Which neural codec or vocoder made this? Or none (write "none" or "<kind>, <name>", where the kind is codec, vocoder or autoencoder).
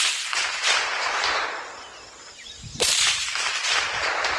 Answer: vocoder, BigVGAN v2